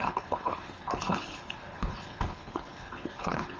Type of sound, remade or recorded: remade